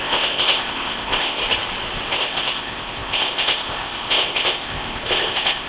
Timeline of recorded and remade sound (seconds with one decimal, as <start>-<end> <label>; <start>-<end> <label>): 0.0-1.4 remade; 1.4-2.1 recorded; 2.1-5.7 remade